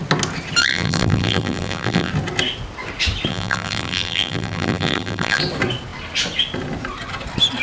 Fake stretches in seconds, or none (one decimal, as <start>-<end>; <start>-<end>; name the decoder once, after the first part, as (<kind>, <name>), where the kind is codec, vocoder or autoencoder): 0.6-2.1 (vocoder, BigVGAN v2); 3.3-5.4